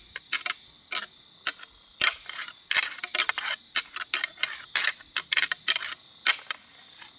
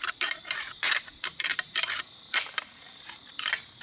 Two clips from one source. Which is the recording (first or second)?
first